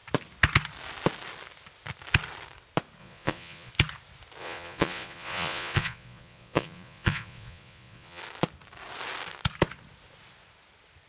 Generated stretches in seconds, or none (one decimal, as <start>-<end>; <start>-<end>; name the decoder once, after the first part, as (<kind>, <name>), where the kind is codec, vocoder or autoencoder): 3.0-3.7 (vocoder, Vocos); 4.4-8.2